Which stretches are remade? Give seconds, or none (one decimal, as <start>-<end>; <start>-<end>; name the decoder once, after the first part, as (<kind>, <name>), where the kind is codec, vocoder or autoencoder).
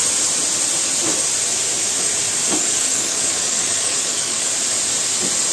2.6-4.5 (codec, DAC)